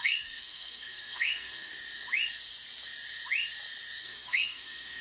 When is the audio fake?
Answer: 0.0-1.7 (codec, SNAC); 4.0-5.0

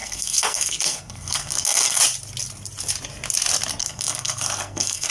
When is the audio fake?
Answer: 0.0-2.0 (codec, SNAC); 3.8-5.1

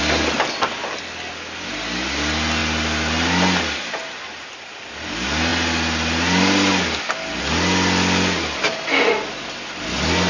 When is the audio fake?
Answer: none